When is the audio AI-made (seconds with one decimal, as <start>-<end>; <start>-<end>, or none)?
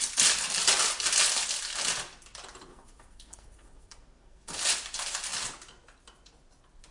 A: 2.7-4.6